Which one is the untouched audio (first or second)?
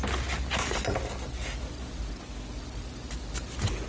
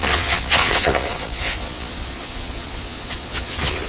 first